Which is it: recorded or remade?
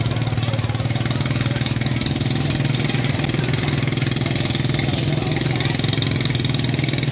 recorded